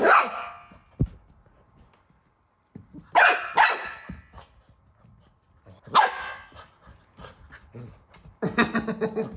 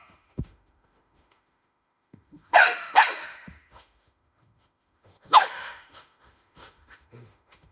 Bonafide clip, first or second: first